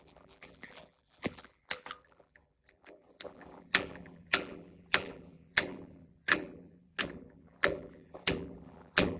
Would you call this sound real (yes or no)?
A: no